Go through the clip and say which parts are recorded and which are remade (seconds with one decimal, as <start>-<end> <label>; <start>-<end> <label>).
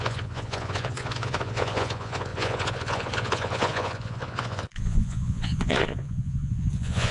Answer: 0.0-7.1 remade